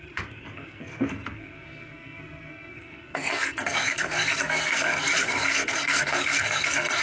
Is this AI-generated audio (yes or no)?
yes